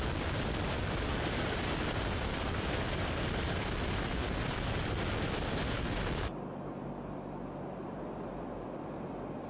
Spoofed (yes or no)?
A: no